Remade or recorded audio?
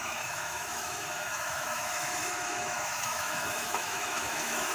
remade